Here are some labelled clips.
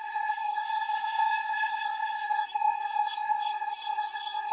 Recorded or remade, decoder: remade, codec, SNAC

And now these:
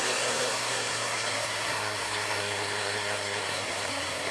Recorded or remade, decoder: remade, codec, SNAC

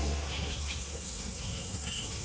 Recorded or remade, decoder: remade, codec, SNAC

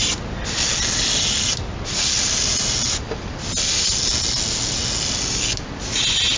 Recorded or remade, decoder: recorded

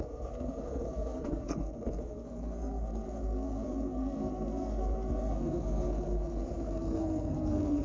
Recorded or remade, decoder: remade, codec, SNAC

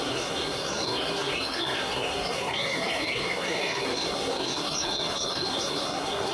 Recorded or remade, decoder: remade, codec, SNAC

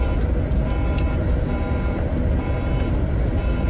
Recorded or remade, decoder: recorded